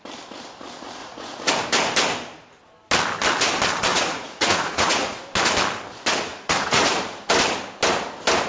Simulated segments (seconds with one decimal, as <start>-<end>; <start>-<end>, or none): 1.0-1.5; 3.9-5.2; 6.3-7.0